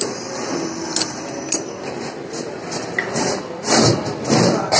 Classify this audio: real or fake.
fake